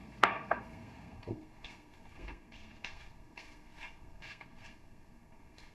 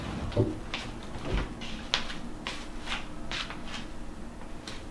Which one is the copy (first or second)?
first